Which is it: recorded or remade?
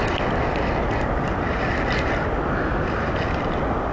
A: recorded